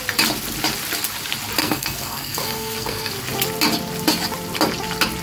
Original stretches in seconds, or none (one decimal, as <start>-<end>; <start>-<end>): 0.0-1.6; 3.1-5.2